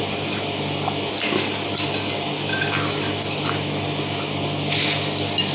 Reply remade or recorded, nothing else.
recorded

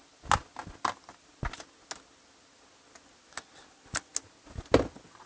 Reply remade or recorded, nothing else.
recorded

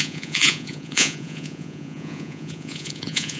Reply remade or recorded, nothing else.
remade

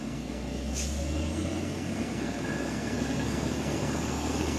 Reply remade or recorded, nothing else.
remade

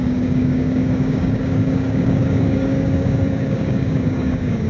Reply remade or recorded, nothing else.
remade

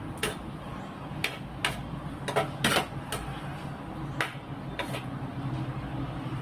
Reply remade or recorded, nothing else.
recorded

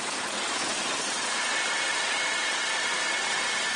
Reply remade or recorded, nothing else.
recorded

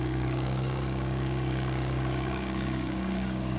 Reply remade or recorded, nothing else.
remade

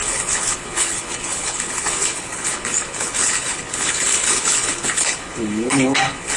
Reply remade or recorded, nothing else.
remade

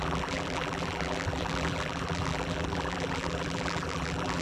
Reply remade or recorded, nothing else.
remade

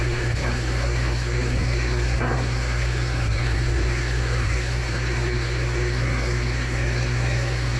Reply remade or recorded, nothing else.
remade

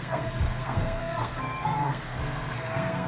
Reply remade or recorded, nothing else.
remade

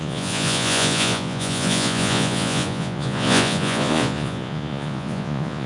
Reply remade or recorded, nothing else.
remade